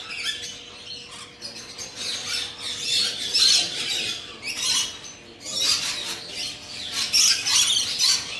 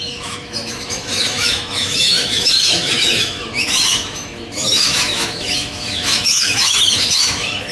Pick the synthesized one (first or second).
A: second